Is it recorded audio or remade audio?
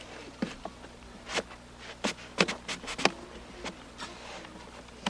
recorded